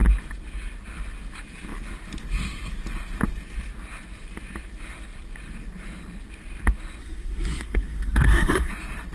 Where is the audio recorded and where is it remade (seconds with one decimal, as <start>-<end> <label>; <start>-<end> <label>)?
0.0-7.0 recorded; 7.0-8.7 remade; 8.7-9.1 recorded